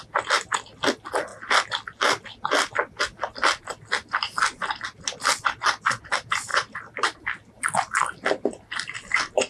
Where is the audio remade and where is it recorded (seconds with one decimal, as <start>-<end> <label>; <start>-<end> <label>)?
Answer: 0.0-6.5 recorded; 6.5-7.2 remade; 7.2-9.5 recorded